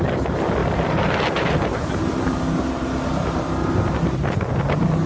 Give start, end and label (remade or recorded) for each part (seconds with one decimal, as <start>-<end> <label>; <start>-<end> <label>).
0.0-0.6 recorded; 0.6-1.9 remade; 1.9-5.1 recorded